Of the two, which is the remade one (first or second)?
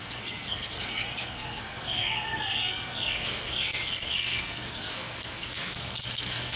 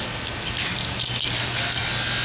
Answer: first